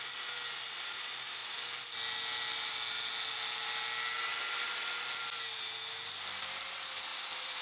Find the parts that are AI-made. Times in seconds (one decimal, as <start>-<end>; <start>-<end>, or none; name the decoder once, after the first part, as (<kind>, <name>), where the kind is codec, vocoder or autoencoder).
4.3-5.0 (vocoder, BigVGAN v2); 7.1-7.6